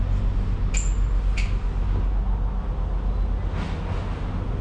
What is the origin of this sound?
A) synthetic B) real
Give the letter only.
B